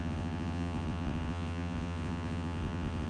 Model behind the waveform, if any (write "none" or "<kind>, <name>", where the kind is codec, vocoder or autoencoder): vocoder, WaveNeXt